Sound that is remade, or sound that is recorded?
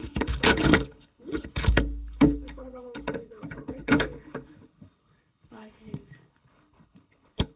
remade